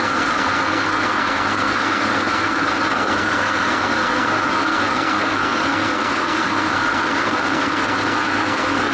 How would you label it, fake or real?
fake